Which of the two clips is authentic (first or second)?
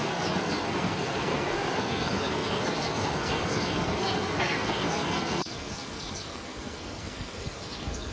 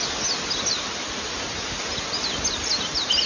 second